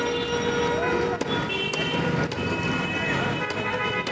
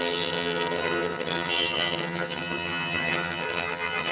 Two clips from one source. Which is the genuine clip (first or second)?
first